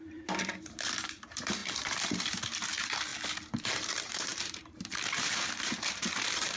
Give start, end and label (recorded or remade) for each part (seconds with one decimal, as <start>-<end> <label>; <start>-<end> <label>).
0.0-3.1 remade; 3.1-3.6 recorded; 3.6-6.6 remade